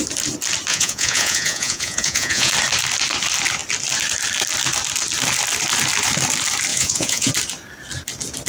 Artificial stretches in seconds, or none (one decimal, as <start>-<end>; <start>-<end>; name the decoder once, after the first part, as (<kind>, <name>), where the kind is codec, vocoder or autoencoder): 0.7-2.5 (vocoder, Vocos); 6.7-7.3